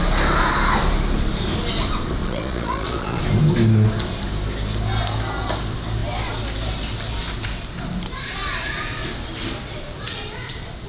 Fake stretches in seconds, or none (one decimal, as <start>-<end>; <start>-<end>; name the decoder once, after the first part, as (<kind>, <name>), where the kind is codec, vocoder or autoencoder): 2.2-3.2 (vocoder, Vocos)